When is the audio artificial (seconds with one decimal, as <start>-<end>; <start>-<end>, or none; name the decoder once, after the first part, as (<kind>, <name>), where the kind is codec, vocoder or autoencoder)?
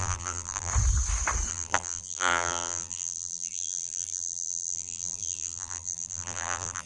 0.0-0.7 (vocoder, BigVGAN v2); 1.5-6.9